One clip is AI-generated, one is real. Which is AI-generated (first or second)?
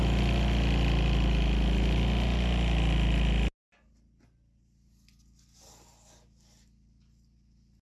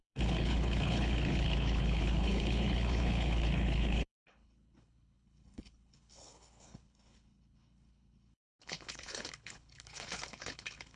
second